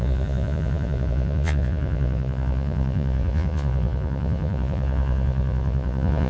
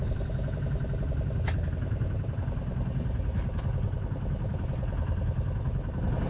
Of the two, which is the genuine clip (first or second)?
second